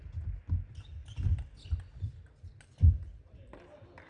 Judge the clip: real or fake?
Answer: real